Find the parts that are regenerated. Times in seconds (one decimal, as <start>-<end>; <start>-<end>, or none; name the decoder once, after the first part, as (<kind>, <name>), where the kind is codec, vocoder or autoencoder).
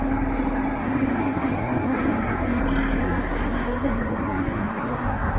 0.8-2.6 (codec, SNAC); 3.0-5.4